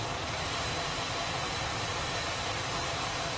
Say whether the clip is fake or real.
fake